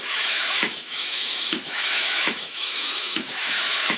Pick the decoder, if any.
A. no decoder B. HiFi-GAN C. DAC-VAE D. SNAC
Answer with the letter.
C